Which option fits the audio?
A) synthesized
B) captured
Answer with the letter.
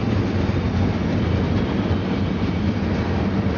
B